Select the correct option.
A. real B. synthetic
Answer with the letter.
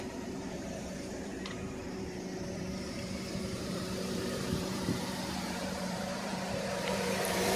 B